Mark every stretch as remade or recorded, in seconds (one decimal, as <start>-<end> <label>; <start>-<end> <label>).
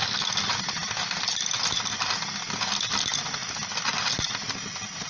0.0-5.1 recorded